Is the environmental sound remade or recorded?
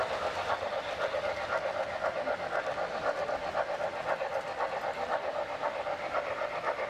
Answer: recorded